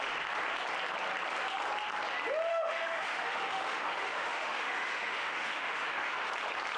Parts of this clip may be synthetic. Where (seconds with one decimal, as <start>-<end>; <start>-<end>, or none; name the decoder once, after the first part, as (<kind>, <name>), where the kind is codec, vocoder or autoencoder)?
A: 2.5-6.3 (autoencoder, DAC-VAE)